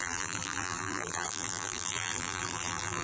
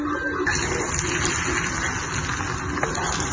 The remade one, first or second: first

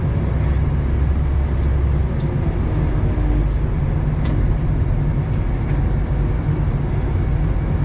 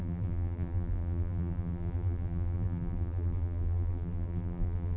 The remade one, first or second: second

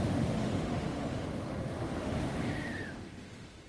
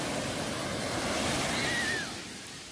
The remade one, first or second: first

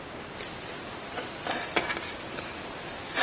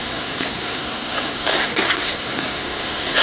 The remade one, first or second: second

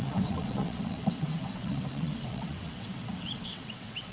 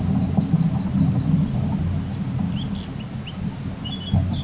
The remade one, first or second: first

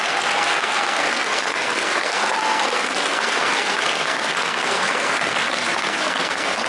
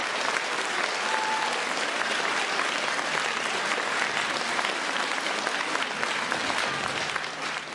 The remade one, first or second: first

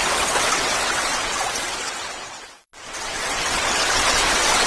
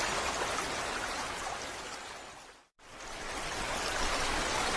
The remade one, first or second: first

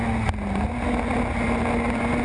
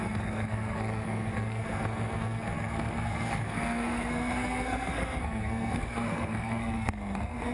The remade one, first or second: second